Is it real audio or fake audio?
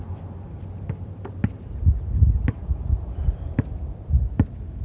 real